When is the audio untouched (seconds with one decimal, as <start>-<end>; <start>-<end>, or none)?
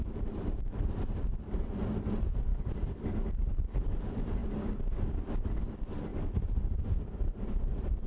2.5-3.3